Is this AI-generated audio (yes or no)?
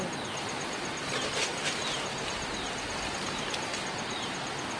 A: no